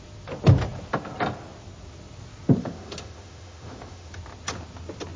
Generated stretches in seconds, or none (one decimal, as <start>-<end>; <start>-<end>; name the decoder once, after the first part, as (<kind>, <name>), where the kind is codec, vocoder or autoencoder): 2.6-4.1 (autoencoder, DAC-VAE)